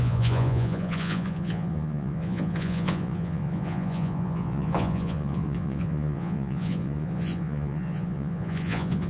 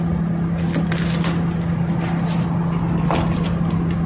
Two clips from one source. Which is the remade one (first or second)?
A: first